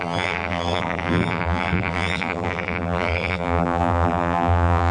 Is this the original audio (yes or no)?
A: no